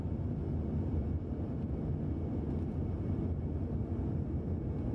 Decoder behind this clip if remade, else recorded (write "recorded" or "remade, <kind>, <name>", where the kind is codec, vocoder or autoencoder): recorded